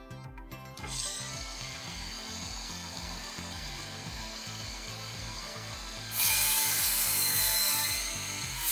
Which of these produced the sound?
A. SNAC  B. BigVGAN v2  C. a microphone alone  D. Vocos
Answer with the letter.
A